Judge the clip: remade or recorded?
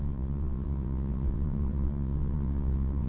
remade